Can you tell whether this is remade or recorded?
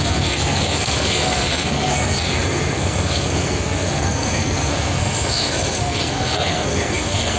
remade